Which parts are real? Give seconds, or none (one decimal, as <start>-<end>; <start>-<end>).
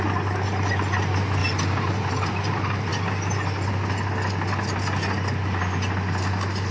0.0-6.7